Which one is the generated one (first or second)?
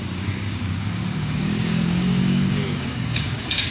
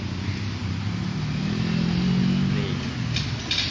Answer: first